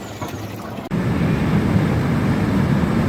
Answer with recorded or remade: recorded